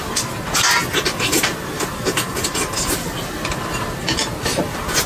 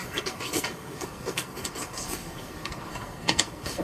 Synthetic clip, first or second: second